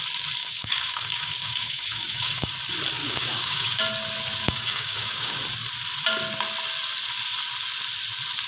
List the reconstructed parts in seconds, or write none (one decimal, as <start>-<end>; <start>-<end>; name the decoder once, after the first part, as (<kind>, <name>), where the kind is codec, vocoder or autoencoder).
0.4-2.5 (codec, DAC); 3.0-3.8; 4.4-5.4